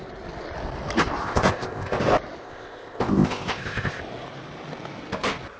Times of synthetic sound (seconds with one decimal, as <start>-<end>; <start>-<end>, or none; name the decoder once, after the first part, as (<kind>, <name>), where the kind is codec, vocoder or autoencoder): 1.2-2.0 (codec, ZipCodec); 2.4-4.0